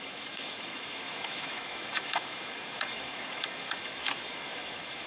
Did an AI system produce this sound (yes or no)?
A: yes